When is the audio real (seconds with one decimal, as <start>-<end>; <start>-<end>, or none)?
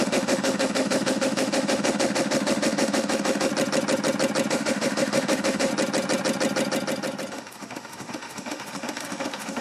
3.5-4.5; 5.7-7.3